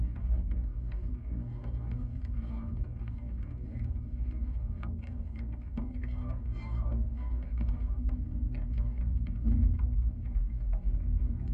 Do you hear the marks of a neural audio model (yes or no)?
yes